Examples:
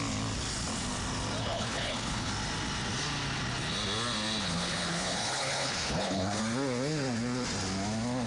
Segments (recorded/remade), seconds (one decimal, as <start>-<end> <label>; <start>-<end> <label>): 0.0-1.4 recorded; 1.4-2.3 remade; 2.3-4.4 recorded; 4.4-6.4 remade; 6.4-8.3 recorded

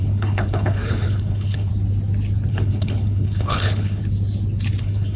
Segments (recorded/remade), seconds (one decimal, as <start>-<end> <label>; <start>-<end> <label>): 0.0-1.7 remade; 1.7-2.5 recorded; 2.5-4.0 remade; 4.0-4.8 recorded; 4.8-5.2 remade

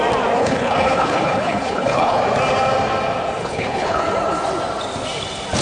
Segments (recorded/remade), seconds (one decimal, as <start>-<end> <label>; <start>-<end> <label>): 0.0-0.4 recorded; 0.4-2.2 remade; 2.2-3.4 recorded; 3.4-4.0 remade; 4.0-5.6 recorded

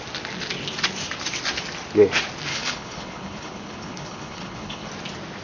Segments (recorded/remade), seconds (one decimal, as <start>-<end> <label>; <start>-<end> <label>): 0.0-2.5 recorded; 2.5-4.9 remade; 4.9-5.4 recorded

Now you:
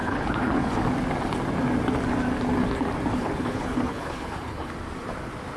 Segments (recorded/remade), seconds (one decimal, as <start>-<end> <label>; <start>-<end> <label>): 0.0-0.7 remade; 0.7-3.1 recorded; 3.1-4.7 remade; 4.7-5.6 recorded